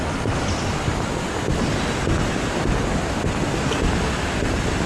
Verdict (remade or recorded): recorded